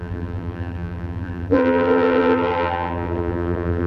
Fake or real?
fake